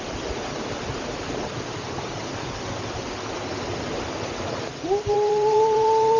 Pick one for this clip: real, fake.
fake